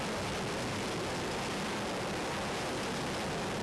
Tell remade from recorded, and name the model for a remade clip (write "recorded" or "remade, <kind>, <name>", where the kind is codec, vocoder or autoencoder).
recorded